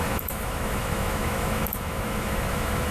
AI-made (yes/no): yes